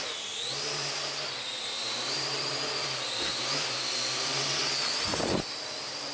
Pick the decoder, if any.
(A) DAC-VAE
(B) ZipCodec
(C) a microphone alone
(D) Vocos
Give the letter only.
C